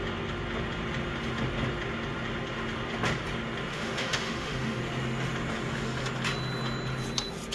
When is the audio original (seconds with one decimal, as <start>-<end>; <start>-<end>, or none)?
0.0-3.7; 4.8-7.5